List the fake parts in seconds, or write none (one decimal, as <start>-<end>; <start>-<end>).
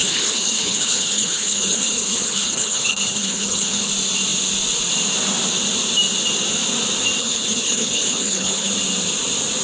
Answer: 0.0-3.9; 7.2-8.7